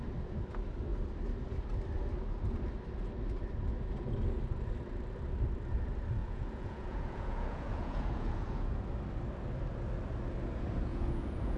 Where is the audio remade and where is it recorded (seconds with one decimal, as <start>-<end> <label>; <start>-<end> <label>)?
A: 0.0-6.2 recorded; 6.2-8.8 remade; 8.8-10.9 recorded; 10.9-11.6 remade